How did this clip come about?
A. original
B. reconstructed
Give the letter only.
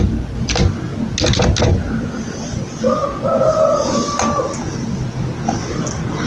A